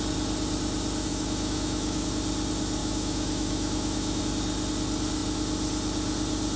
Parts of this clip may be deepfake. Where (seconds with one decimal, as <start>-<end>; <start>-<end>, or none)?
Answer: 1.1-2.1; 2.8-4.2